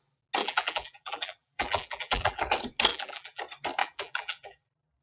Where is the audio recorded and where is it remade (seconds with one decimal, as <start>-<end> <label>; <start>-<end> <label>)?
0.0-0.4 recorded; 0.4-2.4 remade; 2.4-2.9 recorded; 2.9-3.4 remade; 3.4-3.8 recorded; 3.8-5.0 remade

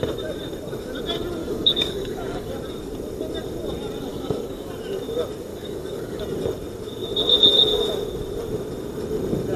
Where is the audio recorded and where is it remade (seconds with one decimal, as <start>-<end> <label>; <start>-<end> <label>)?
0.0-1.4 recorded; 1.4-2.5 remade; 2.5-4.1 recorded; 4.1-4.7 remade; 4.7-5.5 recorded; 5.5-6.2 remade; 6.2-9.6 recorded

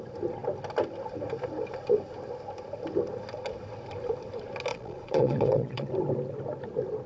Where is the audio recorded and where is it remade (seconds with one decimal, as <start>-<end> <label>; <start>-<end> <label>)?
0.0-4.7 recorded; 4.7-5.9 remade; 5.9-7.1 recorded

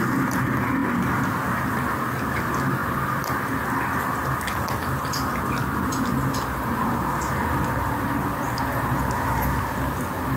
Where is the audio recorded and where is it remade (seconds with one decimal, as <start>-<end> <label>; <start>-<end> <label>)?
0.0-10.4 recorded

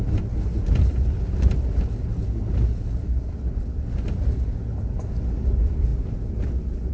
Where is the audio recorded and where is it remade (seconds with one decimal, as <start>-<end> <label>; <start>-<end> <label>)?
0.0-6.9 recorded

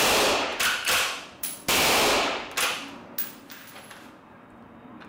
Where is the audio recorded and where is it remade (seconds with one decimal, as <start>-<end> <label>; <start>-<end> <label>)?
0.0-0.5 recorded; 0.5-2.0 remade; 2.0-5.1 recorded